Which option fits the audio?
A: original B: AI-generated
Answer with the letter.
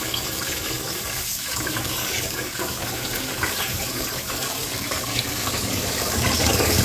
B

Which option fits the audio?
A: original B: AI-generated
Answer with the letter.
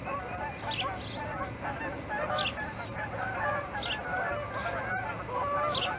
A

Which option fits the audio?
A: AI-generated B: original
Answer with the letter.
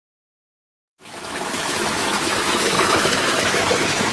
A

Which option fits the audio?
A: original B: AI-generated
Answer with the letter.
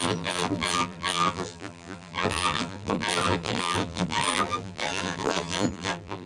B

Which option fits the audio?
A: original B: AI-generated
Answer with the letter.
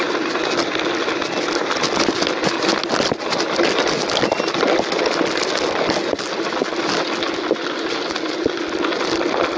A